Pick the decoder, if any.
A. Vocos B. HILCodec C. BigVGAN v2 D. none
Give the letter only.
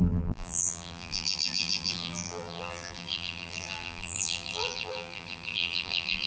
C